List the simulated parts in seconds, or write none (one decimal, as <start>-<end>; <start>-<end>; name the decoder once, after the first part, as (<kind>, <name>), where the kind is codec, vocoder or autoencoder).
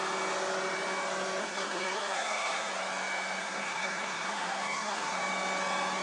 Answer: 1.4-2.7 (codec, SNAC); 3.4-5.2